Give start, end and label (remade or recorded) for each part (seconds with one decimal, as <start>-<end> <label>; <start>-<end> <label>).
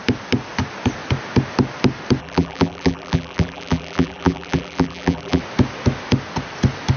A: 0.0-2.2 recorded; 2.2-5.4 remade; 5.4-7.0 recorded